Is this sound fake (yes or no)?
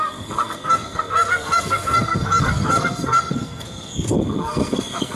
yes